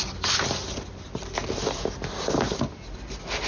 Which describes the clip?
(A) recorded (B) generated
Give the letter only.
A